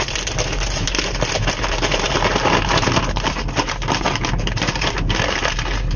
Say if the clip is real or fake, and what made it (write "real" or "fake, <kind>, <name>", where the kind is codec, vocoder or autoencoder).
real